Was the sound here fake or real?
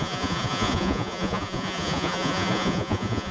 fake